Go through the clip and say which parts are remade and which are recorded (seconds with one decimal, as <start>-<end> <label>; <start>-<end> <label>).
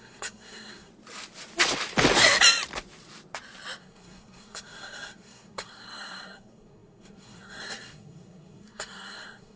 0.0-0.9 remade; 0.9-3.8 recorded; 3.8-9.6 remade